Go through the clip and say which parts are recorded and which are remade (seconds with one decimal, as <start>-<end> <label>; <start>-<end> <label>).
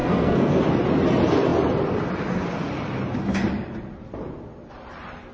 0.0-0.6 remade; 0.6-5.3 recorded